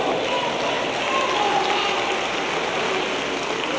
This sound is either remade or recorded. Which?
recorded